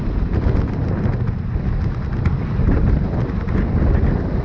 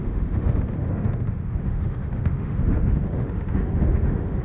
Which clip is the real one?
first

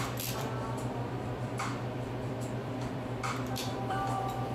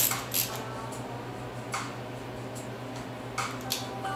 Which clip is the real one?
second